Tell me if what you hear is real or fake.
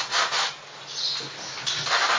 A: real